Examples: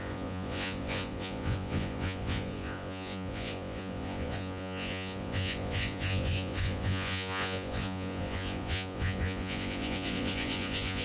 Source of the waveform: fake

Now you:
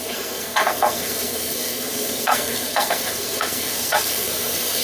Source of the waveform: fake